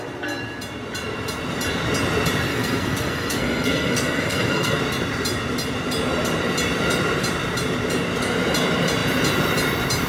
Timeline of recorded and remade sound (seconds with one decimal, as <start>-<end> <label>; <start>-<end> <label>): 0.0-2.5 recorded; 2.5-4.8 remade; 4.8-10.1 recorded